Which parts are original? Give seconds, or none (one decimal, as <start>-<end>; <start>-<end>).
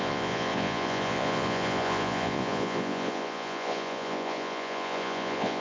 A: none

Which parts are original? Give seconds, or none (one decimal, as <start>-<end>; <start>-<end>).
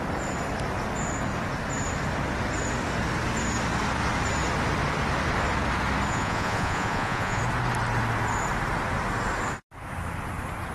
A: 0.0-6.1; 7.4-10.7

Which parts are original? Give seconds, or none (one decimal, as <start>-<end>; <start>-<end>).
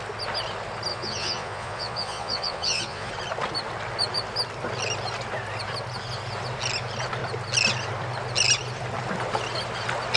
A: 0.0-0.9; 3.1-10.2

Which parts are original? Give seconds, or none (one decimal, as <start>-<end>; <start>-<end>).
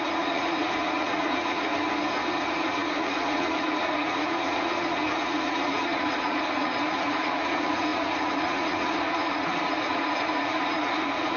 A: 1.7-2.3